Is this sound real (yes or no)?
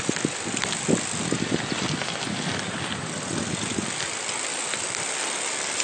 yes